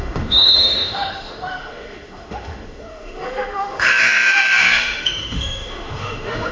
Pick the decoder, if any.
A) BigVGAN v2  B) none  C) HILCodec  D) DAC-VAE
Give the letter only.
D